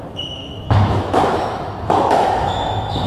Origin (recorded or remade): remade